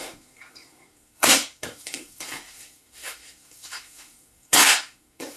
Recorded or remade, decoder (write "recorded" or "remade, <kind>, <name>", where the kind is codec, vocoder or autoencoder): remade, codec, SNAC